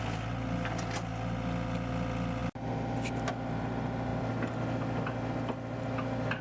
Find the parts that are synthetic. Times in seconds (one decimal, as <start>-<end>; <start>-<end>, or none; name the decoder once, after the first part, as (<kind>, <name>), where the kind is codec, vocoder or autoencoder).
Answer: none